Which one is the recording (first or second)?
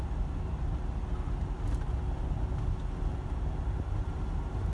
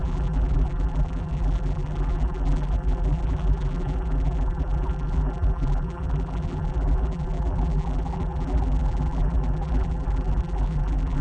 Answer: first